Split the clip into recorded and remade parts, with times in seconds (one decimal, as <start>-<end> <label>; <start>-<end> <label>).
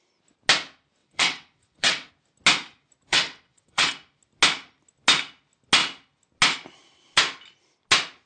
0.0-1.0 recorded; 1.0-2.1 remade; 2.1-3.1 recorded; 3.1-3.9 remade; 3.9-8.3 recorded